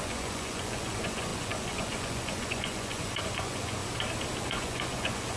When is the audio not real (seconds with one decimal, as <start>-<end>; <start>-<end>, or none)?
0.0-3.8; 4.4-5.4